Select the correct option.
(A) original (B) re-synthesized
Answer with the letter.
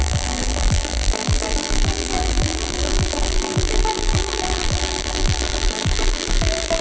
B